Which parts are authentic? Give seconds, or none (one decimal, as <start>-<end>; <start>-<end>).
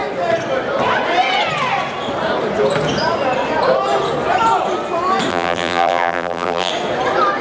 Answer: 0.0-5.3; 6.7-7.4